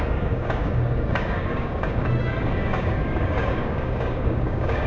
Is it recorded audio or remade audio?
remade